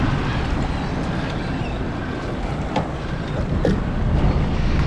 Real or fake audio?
real